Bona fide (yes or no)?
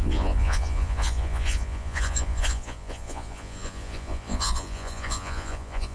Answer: no